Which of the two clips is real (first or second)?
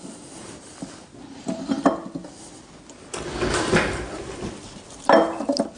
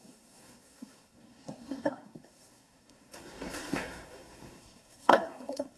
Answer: first